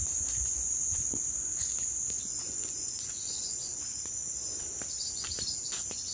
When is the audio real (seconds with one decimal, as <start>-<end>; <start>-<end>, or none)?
4.2-5.1